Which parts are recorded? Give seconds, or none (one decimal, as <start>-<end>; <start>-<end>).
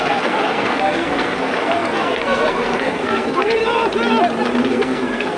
3.6-4.6